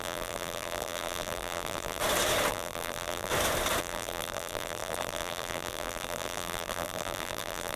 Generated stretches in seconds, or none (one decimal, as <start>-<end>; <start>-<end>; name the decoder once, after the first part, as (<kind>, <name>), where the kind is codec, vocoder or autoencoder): 0.0-2.0 (vocoder, BigVGAN v2); 2.5-3.3; 3.8-7.8